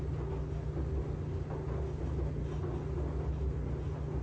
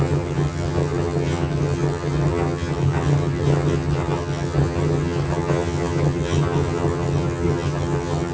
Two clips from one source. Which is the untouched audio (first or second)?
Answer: first